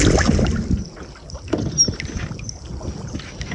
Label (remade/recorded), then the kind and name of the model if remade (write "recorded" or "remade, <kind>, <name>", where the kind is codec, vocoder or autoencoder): recorded